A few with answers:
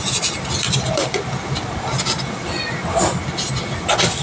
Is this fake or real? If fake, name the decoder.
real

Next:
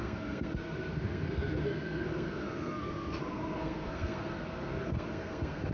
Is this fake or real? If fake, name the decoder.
fake, codec, SNAC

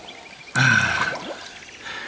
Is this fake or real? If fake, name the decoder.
real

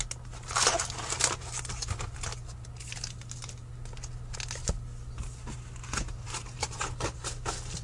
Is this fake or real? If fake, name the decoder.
real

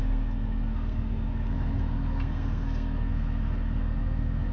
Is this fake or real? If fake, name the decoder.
fake, codec, SNAC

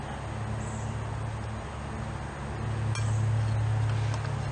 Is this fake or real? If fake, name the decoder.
real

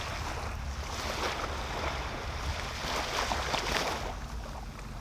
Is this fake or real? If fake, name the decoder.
real